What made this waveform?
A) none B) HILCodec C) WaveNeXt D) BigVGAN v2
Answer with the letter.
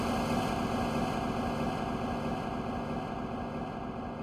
A